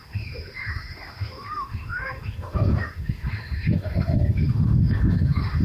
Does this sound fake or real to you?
fake